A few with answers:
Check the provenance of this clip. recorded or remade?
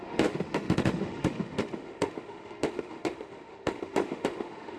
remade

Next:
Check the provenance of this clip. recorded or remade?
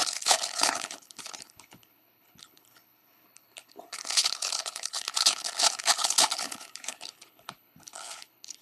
remade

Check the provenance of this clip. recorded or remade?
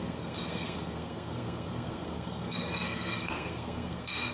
remade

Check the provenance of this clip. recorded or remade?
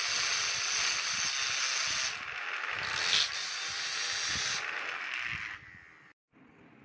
recorded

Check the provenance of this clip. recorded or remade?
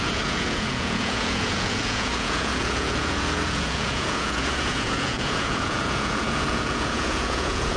remade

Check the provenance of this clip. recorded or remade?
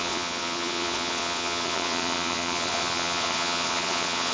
remade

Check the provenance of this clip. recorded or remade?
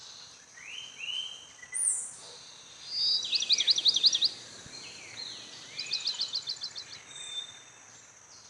recorded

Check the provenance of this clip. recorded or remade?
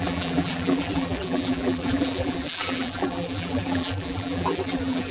remade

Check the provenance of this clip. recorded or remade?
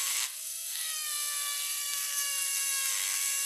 remade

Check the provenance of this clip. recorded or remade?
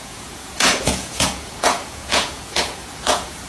remade